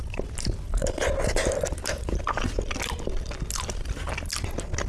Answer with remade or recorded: recorded